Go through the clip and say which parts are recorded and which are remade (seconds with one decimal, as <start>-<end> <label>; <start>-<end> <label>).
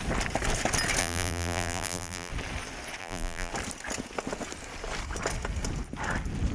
0.0-1.0 recorded; 1.0-2.3 remade; 2.3-3.0 recorded; 3.0-3.5 remade; 3.5-6.5 recorded